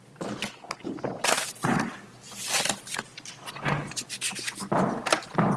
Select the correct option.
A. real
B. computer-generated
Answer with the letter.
A